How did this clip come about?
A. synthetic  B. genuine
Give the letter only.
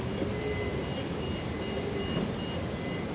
B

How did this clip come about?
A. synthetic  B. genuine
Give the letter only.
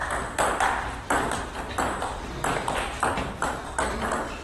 B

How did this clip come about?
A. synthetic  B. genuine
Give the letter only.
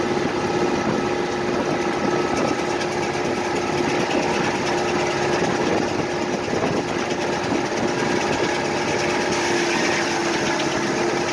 B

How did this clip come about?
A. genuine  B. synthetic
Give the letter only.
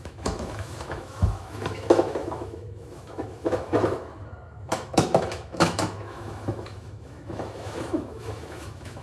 B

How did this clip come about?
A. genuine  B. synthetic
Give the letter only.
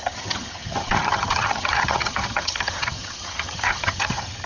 B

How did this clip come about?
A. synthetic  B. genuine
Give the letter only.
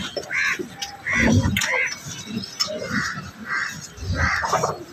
B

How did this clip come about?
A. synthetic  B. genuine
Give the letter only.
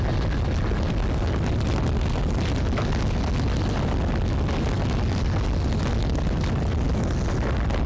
B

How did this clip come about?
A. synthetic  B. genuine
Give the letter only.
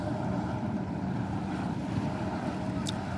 A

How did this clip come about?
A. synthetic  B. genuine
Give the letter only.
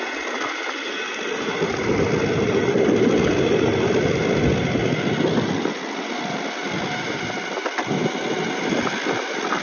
B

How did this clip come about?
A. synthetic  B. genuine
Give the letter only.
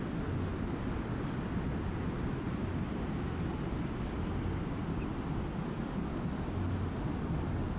B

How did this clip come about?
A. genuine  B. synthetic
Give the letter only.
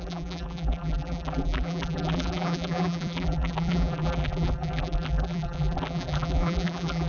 B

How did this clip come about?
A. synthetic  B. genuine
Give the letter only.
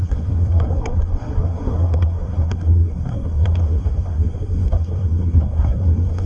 A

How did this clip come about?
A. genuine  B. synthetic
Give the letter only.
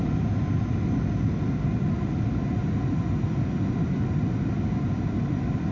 A